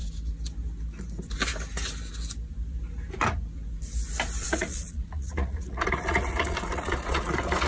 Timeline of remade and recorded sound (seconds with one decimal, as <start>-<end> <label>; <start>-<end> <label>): 0.0-4.4 recorded; 4.4-7.7 remade